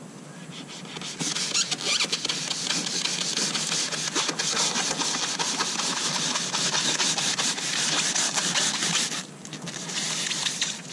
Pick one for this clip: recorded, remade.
recorded